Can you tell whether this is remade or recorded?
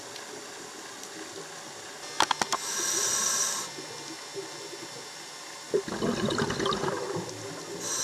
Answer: recorded